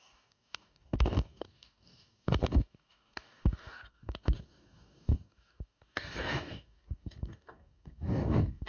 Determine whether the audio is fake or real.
fake